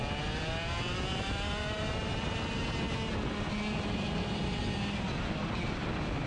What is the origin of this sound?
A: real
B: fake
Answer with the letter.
A